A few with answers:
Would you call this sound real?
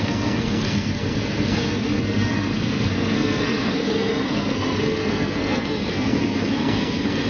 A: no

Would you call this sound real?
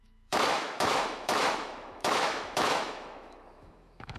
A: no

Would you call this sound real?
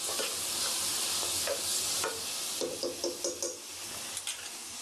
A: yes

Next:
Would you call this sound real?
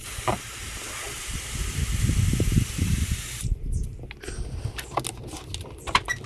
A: yes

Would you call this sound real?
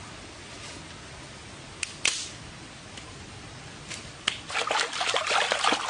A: yes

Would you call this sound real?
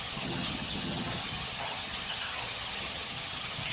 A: no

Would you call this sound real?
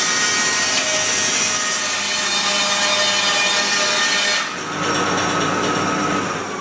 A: yes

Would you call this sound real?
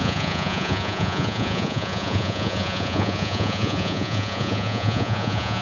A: no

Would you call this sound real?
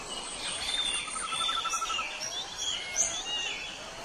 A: yes